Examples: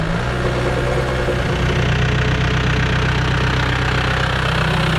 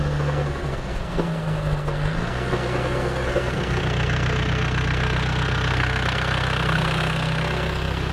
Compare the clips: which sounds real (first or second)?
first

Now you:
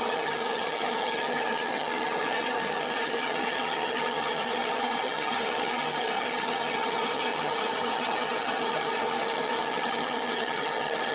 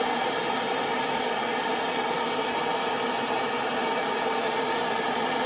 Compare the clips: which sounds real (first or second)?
second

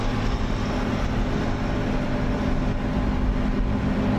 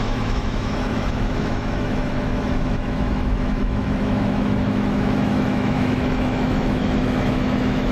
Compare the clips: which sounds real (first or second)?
first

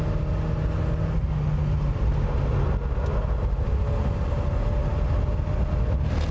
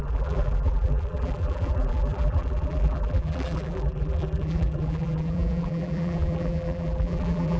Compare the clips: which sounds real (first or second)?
first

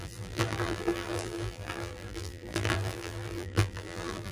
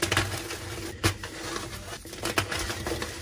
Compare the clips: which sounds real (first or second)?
second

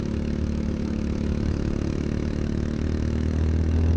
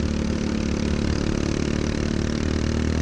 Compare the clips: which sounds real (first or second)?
second